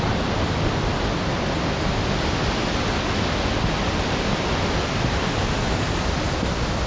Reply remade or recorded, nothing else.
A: recorded